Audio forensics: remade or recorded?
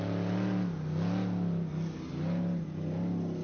recorded